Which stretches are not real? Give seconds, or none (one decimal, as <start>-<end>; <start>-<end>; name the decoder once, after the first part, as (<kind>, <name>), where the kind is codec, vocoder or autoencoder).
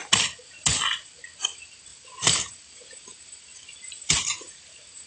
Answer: 1.9-5.1 (vocoder, BigVGAN v2)